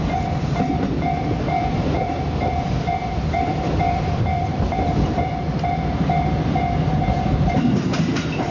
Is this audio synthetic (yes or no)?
yes